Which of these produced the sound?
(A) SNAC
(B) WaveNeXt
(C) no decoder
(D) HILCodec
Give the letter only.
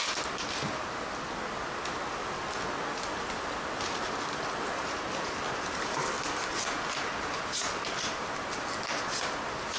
C